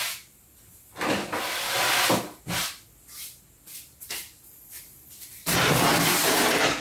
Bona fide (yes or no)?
yes